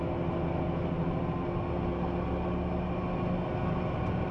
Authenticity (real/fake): real